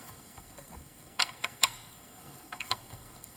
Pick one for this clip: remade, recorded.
remade